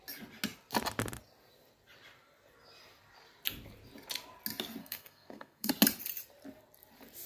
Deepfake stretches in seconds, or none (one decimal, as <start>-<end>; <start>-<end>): 4.8-5.7